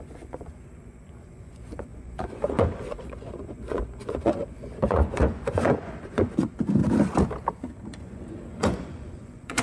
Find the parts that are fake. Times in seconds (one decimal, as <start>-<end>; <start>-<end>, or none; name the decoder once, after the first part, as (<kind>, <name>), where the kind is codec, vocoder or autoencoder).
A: 0.0-6.8 (vocoder, Vocos); 7.5-9.6